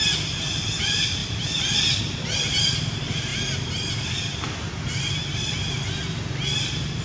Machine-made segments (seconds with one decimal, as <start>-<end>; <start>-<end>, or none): 1.2-2.0; 3.3-5.5